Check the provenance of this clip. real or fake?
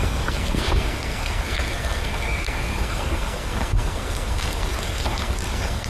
fake